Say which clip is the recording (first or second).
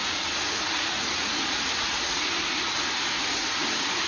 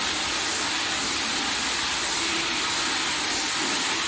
second